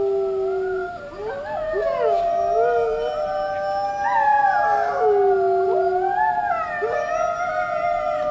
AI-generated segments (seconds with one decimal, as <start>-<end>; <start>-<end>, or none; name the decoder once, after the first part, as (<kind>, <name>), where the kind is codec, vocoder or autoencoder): none